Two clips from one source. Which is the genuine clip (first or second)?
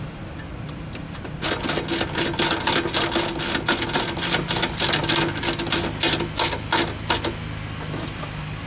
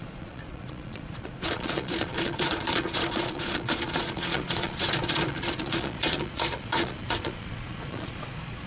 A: first